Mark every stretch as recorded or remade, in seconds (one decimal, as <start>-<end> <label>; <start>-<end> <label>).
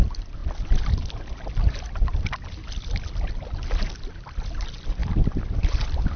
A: 0.0-6.2 recorded